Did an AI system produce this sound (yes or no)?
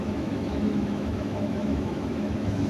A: yes